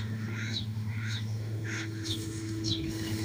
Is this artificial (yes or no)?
yes